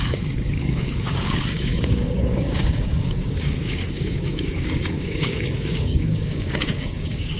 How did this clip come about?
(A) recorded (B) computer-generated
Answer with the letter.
B